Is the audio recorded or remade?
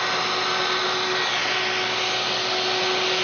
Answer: recorded